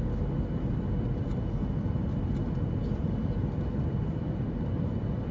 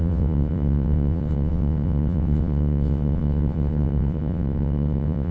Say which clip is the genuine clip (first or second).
first